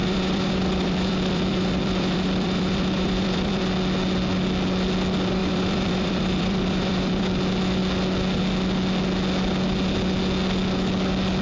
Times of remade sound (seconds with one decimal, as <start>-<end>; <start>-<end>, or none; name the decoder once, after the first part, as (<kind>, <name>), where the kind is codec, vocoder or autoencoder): 0.0-3.6 (vocoder, BigVGAN v2); 5.4-7.2